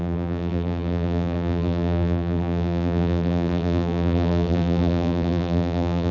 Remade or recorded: remade